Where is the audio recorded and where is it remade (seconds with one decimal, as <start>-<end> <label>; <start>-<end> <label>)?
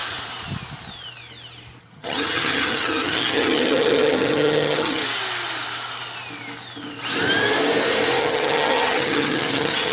0.0-1.8 recorded; 1.8-5.0 remade; 5.0-8.2 recorded; 8.2-9.9 remade